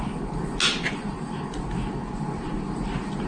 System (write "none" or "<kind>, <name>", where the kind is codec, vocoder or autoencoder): none